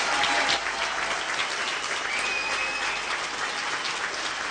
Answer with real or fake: real